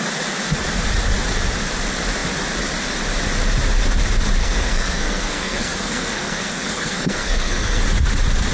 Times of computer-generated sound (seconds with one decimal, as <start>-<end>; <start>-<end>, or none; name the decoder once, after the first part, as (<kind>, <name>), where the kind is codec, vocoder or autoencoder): 4.4-7.8 (codec, SNAC)